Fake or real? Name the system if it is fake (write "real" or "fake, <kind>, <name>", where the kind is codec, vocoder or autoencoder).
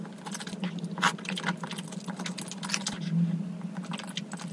real